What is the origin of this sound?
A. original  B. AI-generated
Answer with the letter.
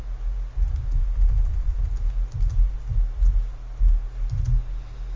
A